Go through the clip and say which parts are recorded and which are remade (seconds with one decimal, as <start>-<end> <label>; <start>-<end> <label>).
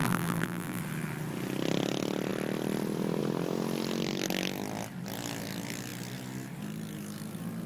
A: 0.0-0.8 remade; 0.8-7.7 recorded